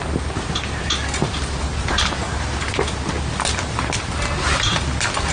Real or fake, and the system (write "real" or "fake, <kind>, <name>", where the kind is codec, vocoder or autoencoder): real